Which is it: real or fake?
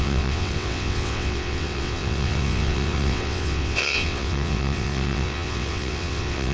fake